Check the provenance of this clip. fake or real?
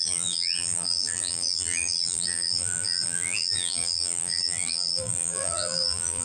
fake